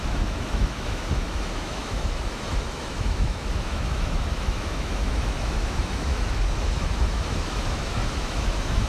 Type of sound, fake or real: fake